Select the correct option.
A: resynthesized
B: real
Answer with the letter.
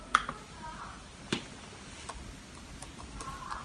B